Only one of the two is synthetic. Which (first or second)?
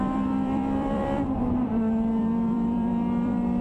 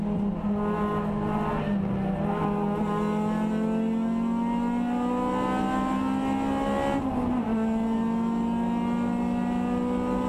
first